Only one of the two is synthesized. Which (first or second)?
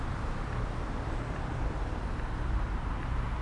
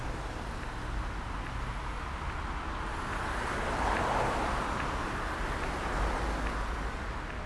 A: first